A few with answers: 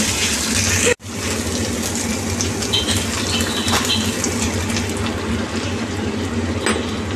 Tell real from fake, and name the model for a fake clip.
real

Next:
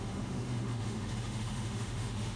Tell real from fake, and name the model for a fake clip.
fake, autoencoder, DAC-VAE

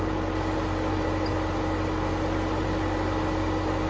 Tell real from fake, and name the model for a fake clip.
real